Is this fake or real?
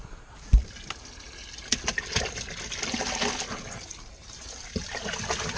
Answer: real